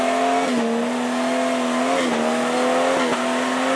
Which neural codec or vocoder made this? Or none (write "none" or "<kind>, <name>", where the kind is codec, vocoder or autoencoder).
none